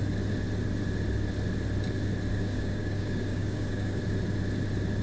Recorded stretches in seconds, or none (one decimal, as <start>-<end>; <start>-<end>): 0.0-2.3; 4.0-5.0